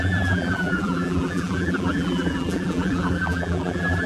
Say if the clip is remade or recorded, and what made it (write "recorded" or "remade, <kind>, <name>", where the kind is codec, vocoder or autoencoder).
remade, vocoder, BigVGAN v2